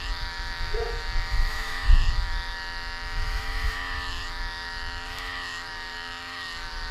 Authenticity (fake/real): fake